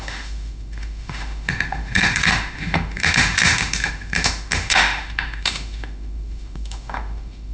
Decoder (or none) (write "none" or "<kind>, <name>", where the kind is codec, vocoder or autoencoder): autoencoder, DAC-VAE